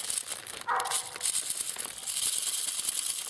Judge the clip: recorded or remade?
recorded